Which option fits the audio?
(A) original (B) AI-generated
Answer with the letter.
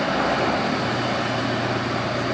A